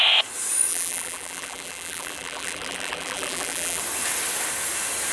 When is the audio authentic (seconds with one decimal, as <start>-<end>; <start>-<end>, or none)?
0.0-0.7; 3.8-5.1